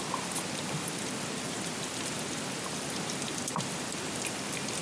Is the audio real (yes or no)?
no